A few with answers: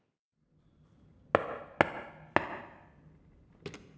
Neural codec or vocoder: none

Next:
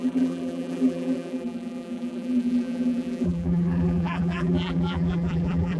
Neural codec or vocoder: vocoder, BigVGAN v2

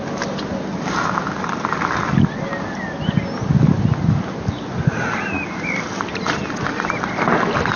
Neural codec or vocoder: none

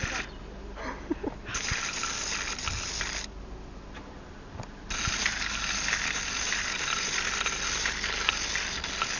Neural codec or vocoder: none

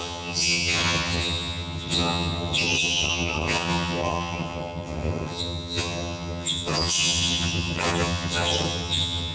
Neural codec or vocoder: vocoder, HiFi-GAN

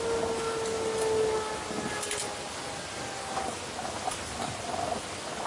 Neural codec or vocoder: none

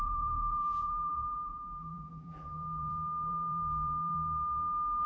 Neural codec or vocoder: vocoder, BigVGAN v2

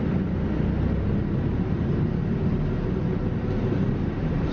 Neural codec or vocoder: none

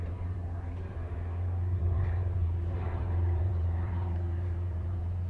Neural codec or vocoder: vocoder, BigVGAN v2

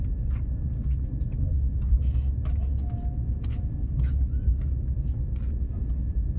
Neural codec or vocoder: none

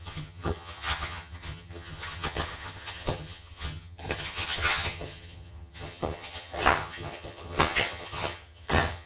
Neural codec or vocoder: vocoder, HiFi-GAN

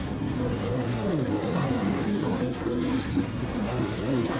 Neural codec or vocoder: codec, SNAC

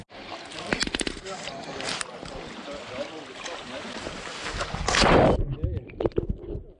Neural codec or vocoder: none